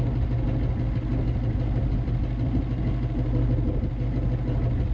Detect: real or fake real